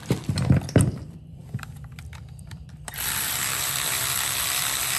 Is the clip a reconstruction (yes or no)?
yes